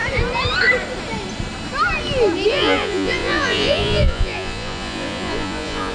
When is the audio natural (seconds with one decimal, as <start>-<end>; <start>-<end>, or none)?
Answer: 0.0-2.5